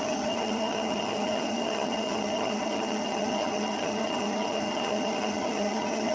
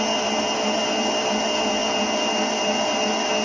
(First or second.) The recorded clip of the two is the second